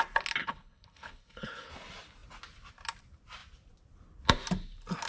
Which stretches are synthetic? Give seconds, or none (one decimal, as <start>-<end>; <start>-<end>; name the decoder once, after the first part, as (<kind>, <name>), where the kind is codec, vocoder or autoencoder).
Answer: 0.4-1.7 (codec, HILCodec)